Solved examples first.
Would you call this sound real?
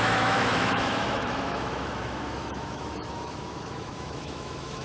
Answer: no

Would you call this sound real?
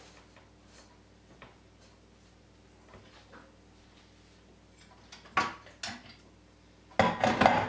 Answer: yes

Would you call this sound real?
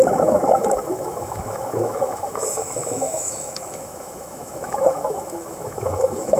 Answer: no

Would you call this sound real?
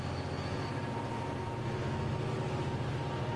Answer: yes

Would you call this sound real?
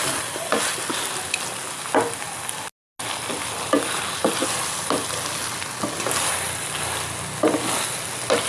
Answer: yes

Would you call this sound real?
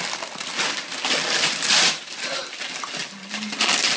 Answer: yes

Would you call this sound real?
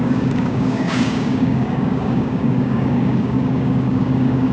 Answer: no